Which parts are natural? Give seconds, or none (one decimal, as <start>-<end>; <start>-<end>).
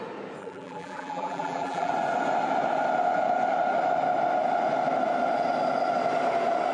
0.0-0.4; 1.9-6.7